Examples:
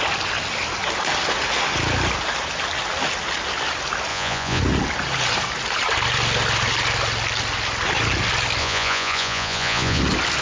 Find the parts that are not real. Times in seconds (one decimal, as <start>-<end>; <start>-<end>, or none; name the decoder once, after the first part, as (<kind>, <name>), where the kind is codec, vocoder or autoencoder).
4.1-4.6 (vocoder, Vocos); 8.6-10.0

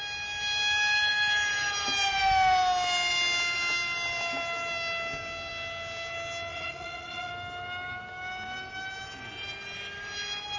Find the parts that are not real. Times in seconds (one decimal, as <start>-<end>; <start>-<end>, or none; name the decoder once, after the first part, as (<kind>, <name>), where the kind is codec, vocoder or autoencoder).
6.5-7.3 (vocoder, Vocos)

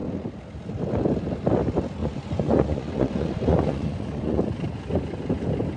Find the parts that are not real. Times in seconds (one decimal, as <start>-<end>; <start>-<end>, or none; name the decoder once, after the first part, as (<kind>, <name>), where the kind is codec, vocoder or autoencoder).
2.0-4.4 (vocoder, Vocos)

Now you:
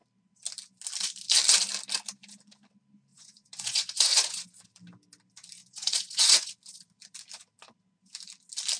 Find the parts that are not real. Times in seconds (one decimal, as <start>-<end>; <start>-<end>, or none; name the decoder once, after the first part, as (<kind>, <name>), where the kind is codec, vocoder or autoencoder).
3.1-4.4 (vocoder, Vocos); 5.6-6.5